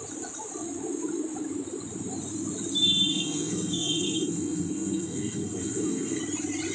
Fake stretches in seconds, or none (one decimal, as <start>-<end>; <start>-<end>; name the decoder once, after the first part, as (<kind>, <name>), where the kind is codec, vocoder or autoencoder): 3.1-6.2 (codec, SNAC)